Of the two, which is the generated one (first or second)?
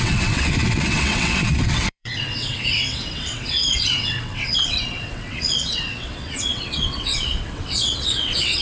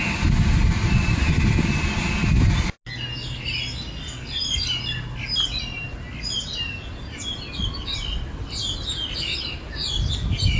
first